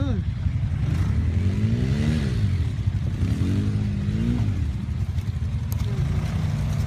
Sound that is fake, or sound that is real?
real